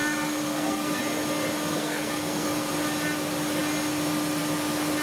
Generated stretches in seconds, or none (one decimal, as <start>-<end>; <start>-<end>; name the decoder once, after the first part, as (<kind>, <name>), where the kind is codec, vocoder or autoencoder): 0.0-1.0 (codec, SNAC); 1.7-2.7